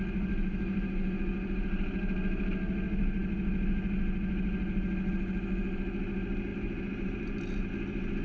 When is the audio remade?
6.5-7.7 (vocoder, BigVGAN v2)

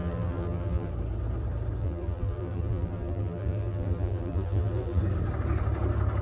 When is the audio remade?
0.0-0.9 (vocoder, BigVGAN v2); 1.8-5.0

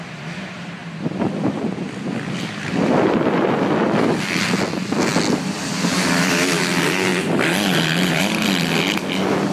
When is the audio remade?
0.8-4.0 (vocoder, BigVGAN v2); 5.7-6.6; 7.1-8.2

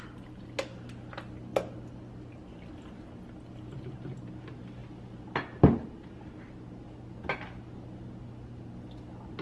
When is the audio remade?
none

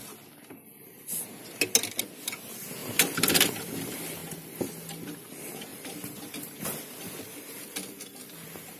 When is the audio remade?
2.8-3.3 (vocoder, BigVGAN v2); 5.7-6.2

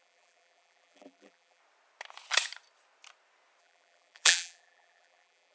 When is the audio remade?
0.0-1.6 (vocoder, BigVGAN v2); 3.6-5.5